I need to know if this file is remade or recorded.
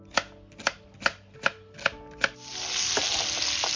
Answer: recorded